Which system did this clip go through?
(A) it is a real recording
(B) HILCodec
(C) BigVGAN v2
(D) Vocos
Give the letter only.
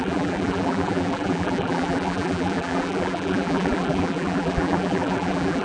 C